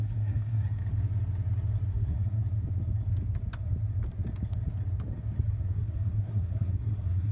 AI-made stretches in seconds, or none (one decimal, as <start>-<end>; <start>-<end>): 0.0-0.8; 1.9-2.4; 5.6-7.3